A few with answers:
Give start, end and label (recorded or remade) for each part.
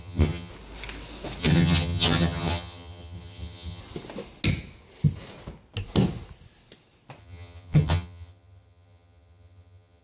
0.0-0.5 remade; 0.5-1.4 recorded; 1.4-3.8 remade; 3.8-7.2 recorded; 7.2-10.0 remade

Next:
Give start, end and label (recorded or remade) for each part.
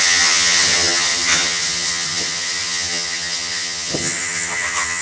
0.0-5.0 remade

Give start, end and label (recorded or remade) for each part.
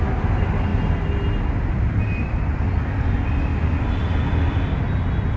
0.0-5.4 recorded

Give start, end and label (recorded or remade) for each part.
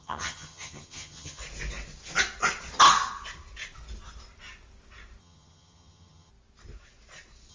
0.0-1.4 remade; 1.4-5.2 recorded; 5.2-6.3 remade; 6.3-7.5 recorded